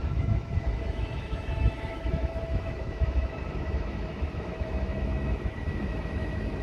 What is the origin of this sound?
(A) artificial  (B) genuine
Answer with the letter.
A